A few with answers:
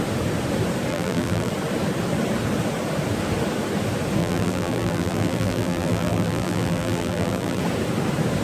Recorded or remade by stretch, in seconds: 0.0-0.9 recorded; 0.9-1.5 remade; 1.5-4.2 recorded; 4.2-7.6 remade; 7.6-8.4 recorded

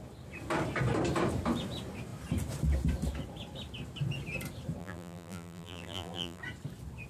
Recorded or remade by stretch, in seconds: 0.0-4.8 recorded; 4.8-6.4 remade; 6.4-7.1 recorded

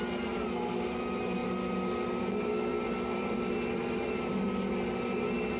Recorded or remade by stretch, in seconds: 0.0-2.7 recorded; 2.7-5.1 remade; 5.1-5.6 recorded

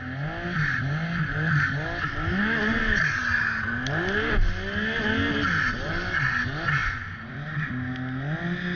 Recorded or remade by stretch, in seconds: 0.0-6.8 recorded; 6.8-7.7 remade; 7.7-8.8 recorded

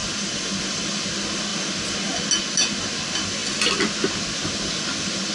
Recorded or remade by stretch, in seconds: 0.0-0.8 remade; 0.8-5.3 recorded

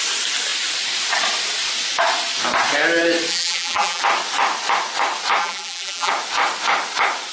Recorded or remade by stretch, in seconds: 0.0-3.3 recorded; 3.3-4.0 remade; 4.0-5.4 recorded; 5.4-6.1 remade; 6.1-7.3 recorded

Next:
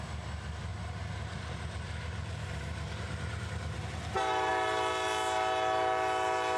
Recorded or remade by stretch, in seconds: 0.0-0.7 recorded; 0.7-4.5 remade; 4.5-6.6 recorded

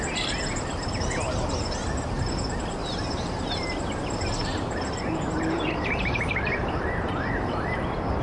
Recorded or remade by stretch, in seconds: 0.0-2.8 recorded; 2.8-3.8 remade; 3.8-4.4 recorded; 4.4-7.7 remade; 7.7-8.2 recorded